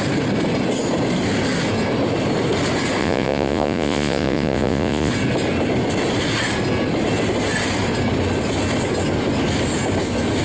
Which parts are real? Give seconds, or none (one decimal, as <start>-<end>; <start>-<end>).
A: 0.0-3.0; 5.1-10.4